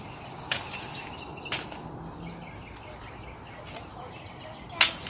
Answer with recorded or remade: recorded